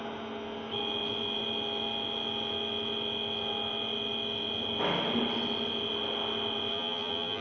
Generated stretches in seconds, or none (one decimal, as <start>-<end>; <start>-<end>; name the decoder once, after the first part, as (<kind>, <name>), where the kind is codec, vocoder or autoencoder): 6.7-7.4 (vocoder, BigVGAN v2)